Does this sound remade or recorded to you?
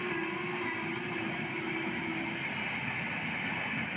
recorded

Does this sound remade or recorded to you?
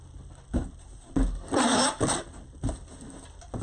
recorded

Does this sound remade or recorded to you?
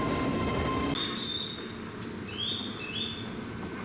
recorded